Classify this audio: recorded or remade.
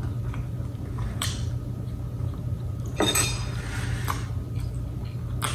recorded